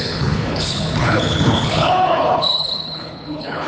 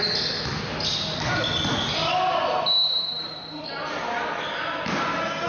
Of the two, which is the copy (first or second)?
first